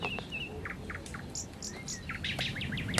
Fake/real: real